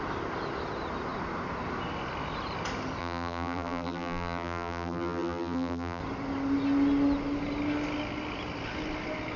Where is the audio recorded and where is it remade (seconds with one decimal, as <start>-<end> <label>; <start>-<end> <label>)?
0.0-3.0 recorded; 3.0-6.0 remade; 6.0-9.4 recorded